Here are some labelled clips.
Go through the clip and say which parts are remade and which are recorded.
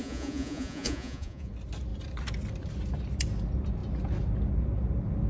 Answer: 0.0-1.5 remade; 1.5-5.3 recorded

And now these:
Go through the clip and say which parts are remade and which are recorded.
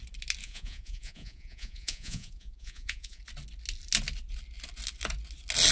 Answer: 0.0-0.4 recorded; 0.4-3.2 remade; 3.2-5.7 recorded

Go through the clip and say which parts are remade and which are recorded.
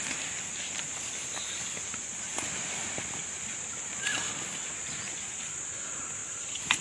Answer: 0.0-6.8 recorded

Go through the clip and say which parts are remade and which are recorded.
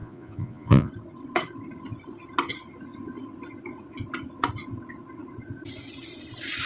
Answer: 0.0-0.9 remade; 0.9-6.7 recorded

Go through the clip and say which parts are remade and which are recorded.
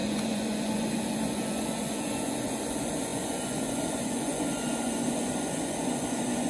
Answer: 0.0-6.5 remade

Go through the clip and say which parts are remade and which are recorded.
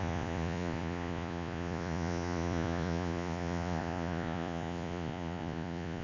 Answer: 0.0-6.0 remade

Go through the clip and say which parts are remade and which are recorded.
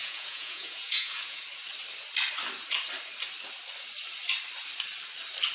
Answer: 0.0-1.4 remade; 1.4-5.5 recorded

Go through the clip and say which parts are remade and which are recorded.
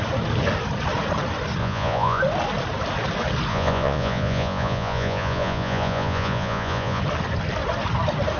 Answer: 0.0-1.6 recorded; 1.6-2.2 remade; 2.2-3.5 recorded; 3.5-7.0 remade; 7.0-8.4 recorded